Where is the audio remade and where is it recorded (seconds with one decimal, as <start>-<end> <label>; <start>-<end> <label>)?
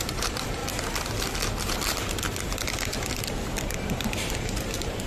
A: 0.0-0.6 remade; 0.6-3.7 recorded; 3.7-5.1 remade